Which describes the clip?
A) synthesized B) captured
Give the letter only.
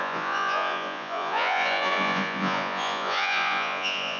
A